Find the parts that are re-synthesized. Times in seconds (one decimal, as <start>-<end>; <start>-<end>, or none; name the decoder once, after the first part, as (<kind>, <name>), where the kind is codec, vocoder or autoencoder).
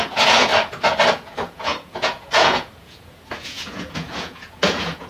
0.0-0.5 (vocoder, Vocos); 1.1-5.1